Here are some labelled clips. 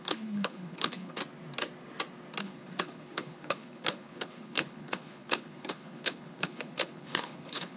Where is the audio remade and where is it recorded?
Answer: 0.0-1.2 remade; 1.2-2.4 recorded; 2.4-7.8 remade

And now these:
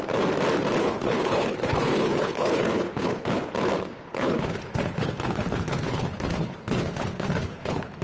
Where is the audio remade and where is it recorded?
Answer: 0.0-0.8 recorded; 0.8-3.5 remade; 3.5-4.1 recorded; 4.1-8.0 remade

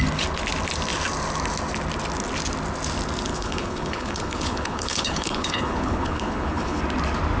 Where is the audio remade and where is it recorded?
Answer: 0.0-3.3 recorded; 3.3-6.8 remade; 6.8-7.4 recorded

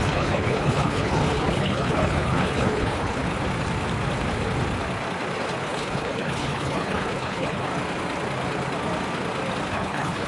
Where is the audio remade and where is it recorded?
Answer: 0.0-3.3 remade; 3.3-5.6 recorded; 5.6-7.7 remade; 7.7-9.7 recorded; 9.7-10.3 remade